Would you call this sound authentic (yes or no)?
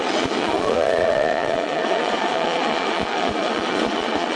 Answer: no